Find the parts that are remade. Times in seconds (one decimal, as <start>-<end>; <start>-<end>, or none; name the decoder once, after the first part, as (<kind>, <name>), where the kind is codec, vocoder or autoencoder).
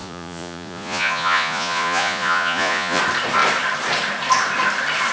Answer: 0.0-3.0 (vocoder, Vocos)